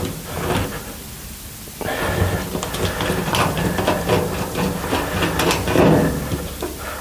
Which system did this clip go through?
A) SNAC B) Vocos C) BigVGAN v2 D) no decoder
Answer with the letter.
D